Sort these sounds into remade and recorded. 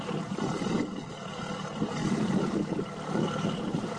recorded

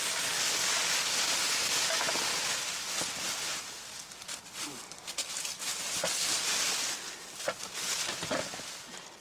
recorded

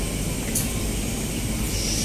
recorded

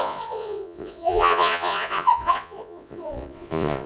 remade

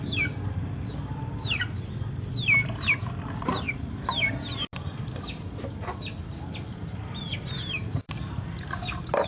recorded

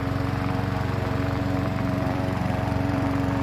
remade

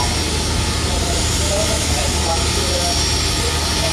recorded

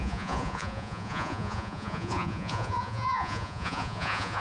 remade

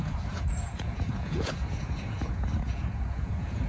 remade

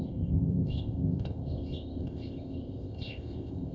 remade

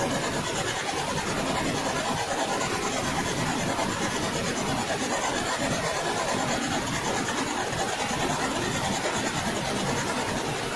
recorded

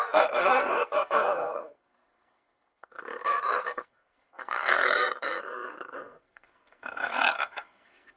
remade